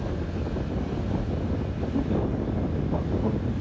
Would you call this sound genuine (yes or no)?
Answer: yes